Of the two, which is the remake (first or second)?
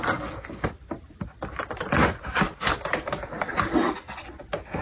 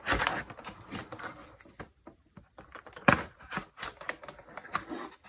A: first